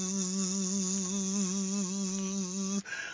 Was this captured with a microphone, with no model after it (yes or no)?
yes